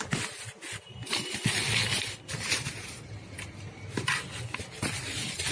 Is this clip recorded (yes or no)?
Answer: yes